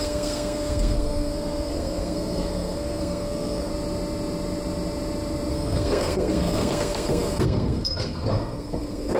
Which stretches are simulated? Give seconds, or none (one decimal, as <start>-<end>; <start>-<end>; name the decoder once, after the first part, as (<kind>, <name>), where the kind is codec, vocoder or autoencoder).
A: 0.0-3.7 (codec, SNAC); 5.5-9.2